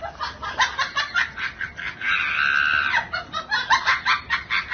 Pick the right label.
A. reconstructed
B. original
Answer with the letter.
B